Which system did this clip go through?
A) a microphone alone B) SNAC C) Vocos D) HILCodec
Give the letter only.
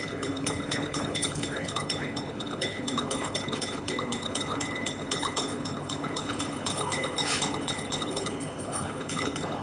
D